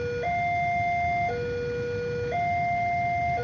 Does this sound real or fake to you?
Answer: real